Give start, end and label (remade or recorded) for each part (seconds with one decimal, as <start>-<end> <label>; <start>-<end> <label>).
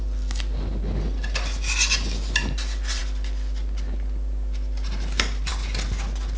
0.0-6.4 recorded